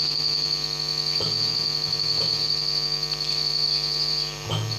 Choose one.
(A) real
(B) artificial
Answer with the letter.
A